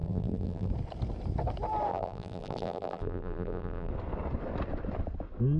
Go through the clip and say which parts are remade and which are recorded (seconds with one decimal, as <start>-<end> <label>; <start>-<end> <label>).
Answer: 0.0-0.7 remade; 0.7-1.9 recorded; 1.9-3.9 remade; 3.9-5.6 recorded